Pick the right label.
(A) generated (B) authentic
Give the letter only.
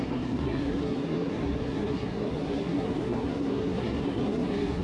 A